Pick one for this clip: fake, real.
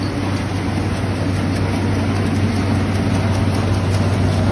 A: real